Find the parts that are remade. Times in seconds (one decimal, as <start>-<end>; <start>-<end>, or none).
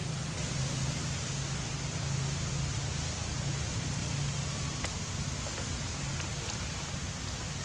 none